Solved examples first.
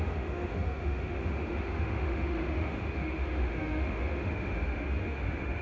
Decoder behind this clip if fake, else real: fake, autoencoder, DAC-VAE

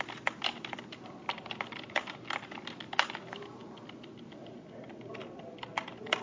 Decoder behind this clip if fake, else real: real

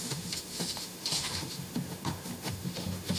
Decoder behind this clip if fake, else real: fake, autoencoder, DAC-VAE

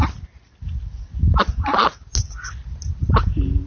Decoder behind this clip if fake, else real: real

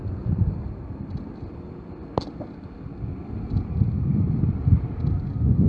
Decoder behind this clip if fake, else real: real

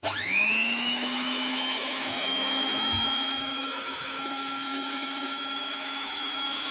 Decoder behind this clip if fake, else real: fake, autoencoder, DAC-VAE